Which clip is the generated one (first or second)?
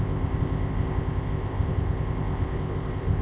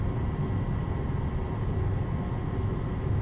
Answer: first